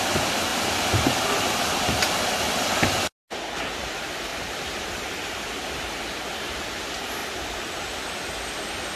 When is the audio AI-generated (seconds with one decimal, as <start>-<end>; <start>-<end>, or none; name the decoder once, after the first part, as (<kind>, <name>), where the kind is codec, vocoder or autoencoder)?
0.5-1.2 (vocoder, BigVGAN v2); 4.3-5.5; 7.2-7.8